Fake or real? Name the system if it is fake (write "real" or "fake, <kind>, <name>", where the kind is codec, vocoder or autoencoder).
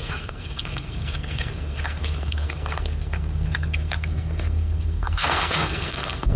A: fake, codec, SNAC